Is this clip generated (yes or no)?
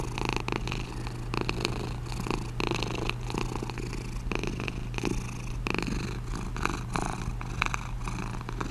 no